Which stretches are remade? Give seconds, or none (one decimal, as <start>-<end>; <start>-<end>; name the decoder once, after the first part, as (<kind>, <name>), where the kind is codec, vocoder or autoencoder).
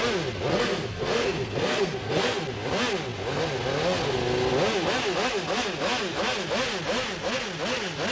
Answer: 0.5-2.4 (codec, SNAC)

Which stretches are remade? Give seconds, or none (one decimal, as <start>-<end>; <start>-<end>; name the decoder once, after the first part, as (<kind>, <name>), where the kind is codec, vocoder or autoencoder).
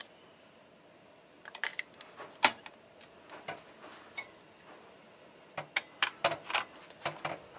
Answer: none